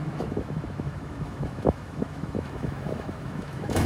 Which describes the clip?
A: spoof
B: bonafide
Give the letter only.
A